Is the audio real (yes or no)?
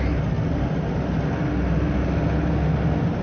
yes